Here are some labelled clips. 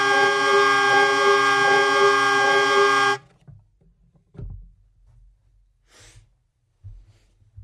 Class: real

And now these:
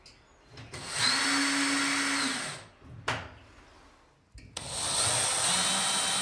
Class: real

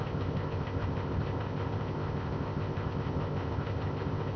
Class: fake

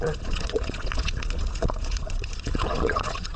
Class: fake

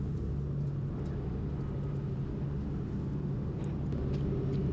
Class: real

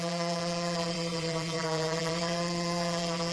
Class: fake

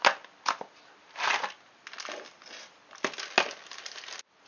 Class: real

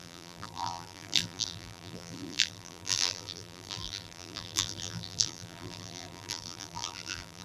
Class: fake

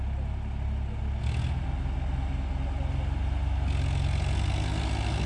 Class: real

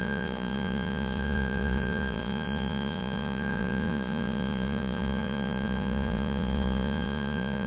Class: fake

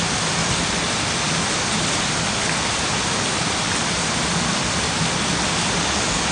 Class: real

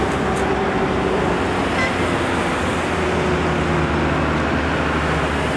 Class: real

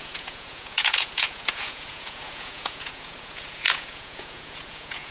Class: fake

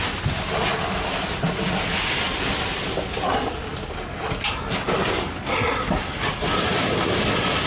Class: real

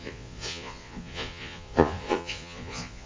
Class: fake